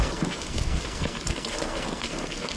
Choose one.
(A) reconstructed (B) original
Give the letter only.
A